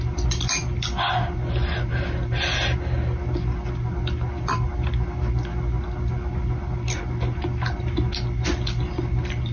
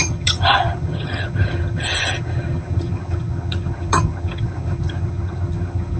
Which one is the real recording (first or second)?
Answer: first